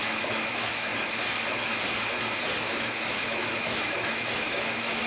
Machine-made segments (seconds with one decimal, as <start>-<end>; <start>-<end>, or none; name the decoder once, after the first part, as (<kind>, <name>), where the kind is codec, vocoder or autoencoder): 0.0-0.9 (autoencoder, DAC-VAE); 2.6-5.1